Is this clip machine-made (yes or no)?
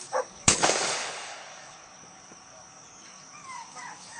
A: yes